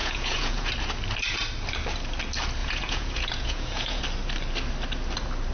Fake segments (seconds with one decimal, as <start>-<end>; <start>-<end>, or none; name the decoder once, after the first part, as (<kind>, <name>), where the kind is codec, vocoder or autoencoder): 0.0-0.7 (vocoder, Vocos); 2.6-4.0

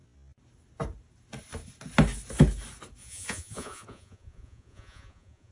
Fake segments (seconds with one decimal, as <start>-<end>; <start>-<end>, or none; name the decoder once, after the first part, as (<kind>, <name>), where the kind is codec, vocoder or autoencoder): 3.0-5.5 (vocoder, Vocos)

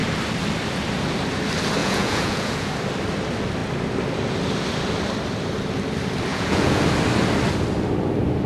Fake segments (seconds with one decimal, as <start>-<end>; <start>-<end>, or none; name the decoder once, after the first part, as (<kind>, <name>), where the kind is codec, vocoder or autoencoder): 1.8-2.7 (vocoder, Vocos); 6.3-6.8

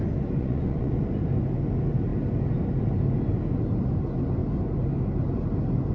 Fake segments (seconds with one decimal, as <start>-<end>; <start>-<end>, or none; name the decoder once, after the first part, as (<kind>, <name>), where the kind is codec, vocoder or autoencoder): 0.4-1.0 (vocoder, Vocos)

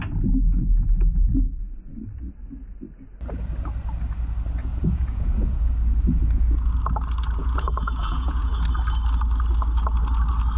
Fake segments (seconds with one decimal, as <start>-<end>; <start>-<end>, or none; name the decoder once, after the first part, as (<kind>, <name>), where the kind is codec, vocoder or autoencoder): 4.6-5.7 (vocoder, Vocos); 7.4-8.5

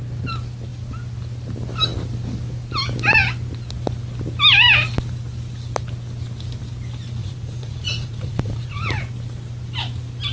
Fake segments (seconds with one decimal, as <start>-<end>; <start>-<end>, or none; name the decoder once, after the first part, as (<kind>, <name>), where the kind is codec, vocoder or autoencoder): 7.2-9.0 (vocoder, Vocos)